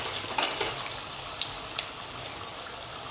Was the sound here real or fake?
real